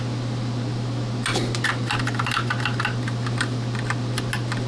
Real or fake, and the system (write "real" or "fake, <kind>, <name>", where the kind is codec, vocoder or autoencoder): real